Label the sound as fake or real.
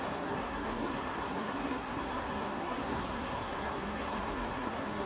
fake